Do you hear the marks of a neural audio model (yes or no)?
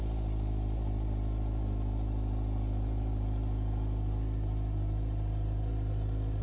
no